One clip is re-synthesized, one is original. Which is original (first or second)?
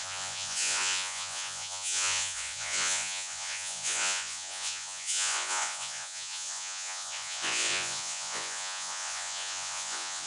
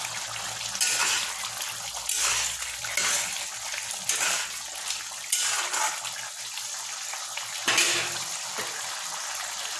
second